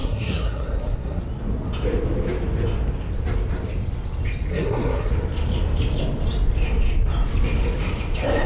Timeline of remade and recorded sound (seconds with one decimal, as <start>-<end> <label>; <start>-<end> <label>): 0.0-1.2 remade; 1.2-4.5 recorded; 4.5-5.1 remade; 5.1-8.5 recorded